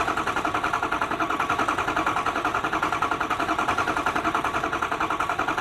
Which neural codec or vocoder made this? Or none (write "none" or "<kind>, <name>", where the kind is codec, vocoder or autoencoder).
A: vocoder, BigVGAN v2